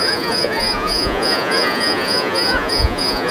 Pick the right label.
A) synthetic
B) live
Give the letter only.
A